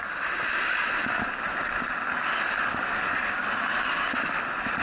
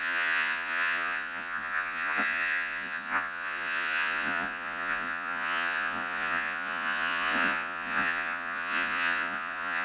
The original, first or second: first